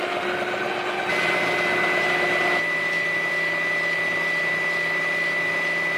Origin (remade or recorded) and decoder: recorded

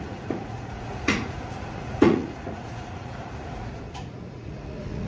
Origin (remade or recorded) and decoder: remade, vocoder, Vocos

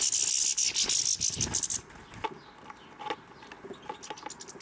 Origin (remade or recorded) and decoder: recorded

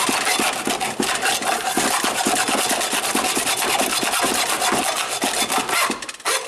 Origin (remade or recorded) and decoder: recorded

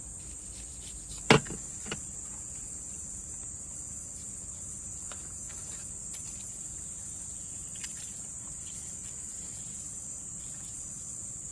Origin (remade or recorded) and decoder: remade, vocoder, BigVGAN v2